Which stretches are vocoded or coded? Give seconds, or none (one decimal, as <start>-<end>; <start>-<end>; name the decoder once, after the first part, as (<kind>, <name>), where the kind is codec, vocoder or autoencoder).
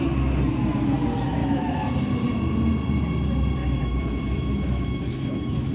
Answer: 1.4-1.9 (autoencoder, DAC-VAE); 3.6-5.7